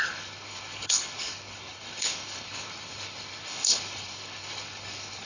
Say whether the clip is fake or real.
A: fake